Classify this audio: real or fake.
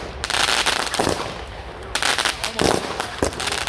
real